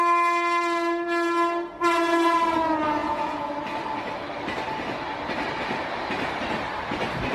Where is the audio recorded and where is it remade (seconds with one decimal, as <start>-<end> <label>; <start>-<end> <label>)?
0.0-3.0 recorded; 3.0-3.5 remade; 3.5-7.3 recorded